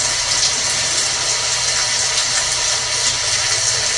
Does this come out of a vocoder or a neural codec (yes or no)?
no